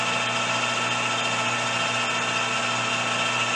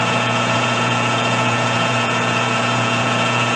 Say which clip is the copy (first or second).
second